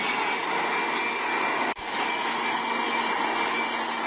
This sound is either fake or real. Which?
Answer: real